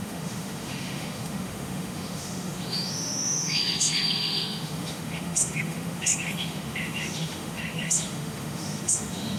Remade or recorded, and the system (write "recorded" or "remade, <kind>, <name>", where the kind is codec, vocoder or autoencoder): remade, autoencoder, DAC-VAE